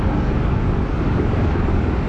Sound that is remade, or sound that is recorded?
remade